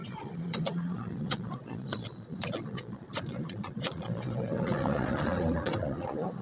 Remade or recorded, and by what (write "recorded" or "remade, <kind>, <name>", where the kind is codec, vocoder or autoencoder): remade, vocoder, Vocos